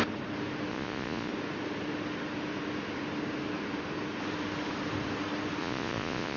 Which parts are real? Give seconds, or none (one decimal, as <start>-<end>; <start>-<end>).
0.0-0.7; 1.3-5.6

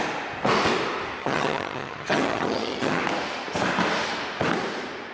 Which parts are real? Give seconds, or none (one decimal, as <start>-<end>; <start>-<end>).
0.0-1.2; 3.0-5.1